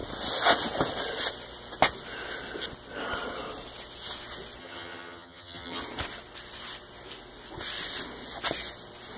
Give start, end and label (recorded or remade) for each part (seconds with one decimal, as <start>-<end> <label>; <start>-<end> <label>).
0.0-4.6 recorded; 4.6-5.8 remade; 5.8-9.2 recorded